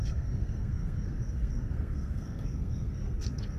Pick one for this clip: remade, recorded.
remade